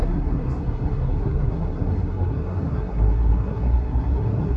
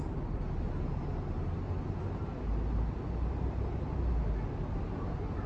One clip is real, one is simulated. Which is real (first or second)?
second